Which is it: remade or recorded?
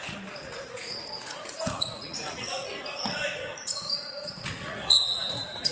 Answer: remade